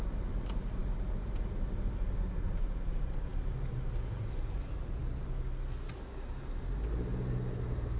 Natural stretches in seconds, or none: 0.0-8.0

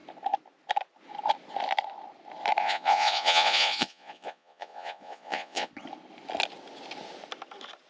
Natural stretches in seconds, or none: 0.0-2.6; 5.7-7.9

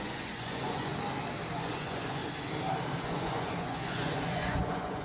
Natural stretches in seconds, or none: 0.9-1.5; 2.2-3.0

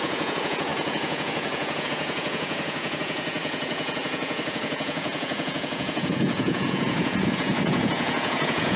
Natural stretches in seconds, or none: none

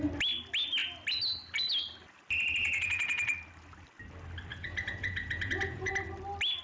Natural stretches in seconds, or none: 0.0-2.6; 3.3-4.5; 5.9-6.6

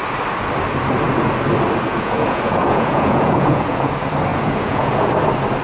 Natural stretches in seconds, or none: 0.0-1.9; 3.9-4.3; 5.1-5.6

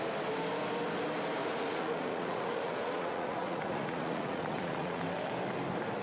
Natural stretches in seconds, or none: 0.0-1.4; 5.0-6.0